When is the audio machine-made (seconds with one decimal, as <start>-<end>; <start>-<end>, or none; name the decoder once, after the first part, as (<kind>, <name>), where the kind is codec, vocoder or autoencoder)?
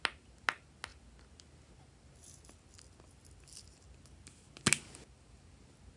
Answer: none